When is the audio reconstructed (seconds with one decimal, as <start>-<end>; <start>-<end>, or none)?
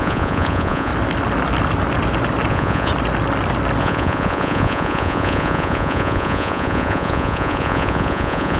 0.0-0.9; 2.5-2.9; 3.8-8.6